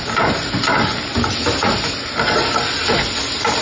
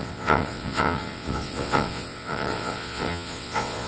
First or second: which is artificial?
second